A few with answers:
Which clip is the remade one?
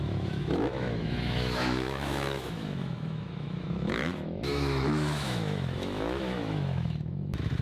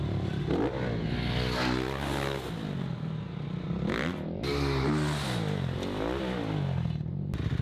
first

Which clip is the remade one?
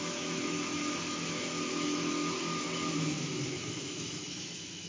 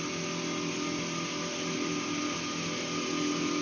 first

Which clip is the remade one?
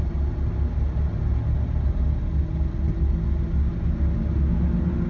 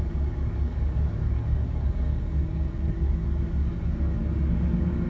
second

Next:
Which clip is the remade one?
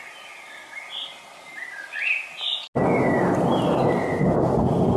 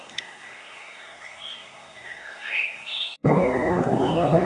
second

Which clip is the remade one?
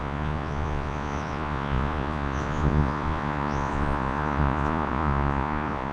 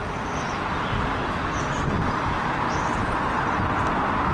first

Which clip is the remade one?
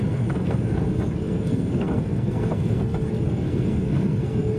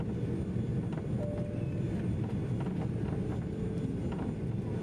first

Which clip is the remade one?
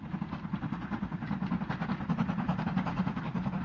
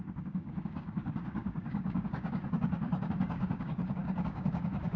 second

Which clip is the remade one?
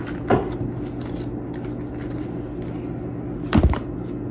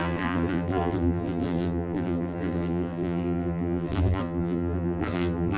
second